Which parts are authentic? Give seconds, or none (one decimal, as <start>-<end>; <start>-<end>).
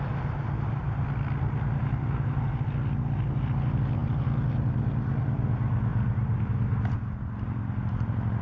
0.0-8.4